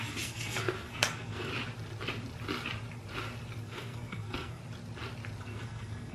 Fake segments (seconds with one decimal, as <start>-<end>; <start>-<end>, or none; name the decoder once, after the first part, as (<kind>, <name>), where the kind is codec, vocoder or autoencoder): 0.0-1.5 (codec, SNAC); 3.6-4.6; 5.4-6.1